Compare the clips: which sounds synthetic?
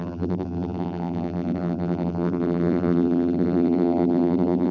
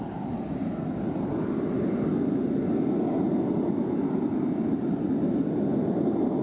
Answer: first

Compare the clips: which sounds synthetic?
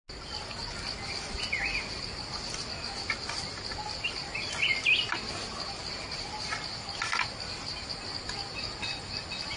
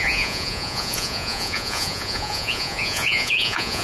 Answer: second